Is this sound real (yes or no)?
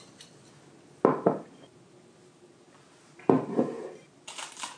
yes